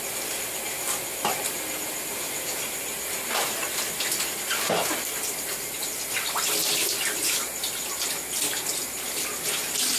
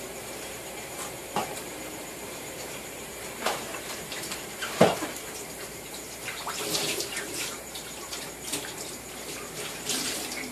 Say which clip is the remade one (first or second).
second